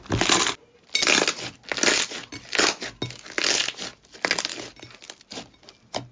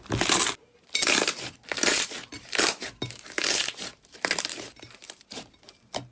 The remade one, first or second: second